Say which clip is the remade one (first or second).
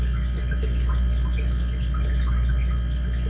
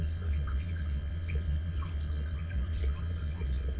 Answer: second